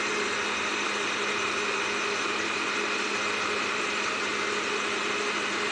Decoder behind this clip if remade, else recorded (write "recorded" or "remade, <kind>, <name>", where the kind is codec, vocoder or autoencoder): recorded